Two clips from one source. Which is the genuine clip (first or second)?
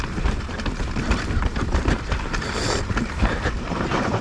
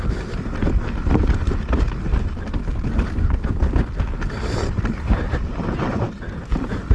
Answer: second